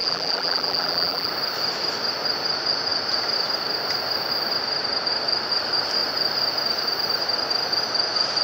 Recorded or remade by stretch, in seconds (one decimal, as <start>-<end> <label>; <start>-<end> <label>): 0.0-1.3 remade; 1.3-8.4 recorded